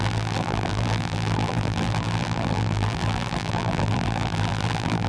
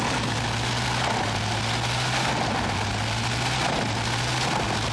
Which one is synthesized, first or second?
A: first